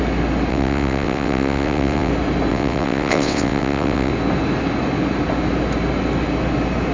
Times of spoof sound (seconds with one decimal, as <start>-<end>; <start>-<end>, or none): 0.5-2.1; 2.5-4.1